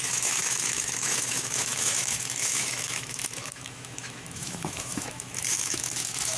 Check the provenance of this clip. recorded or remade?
remade